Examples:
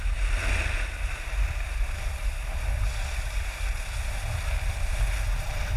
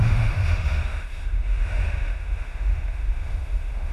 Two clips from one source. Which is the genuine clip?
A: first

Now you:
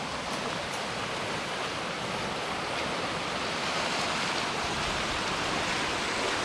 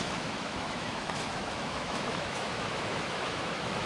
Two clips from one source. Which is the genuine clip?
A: first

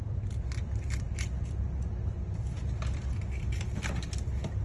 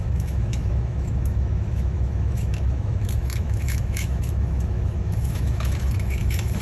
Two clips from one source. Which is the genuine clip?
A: first